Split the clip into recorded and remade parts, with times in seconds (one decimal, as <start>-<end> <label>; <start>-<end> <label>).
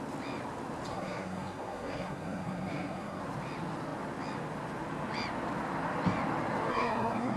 0.0-0.9 recorded; 0.9-3.2 remade; 3.2-6.7 recorded; 6.7-7.4 remade